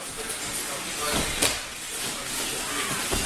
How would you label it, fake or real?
real